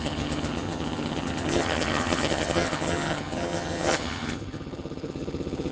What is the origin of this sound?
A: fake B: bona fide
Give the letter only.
A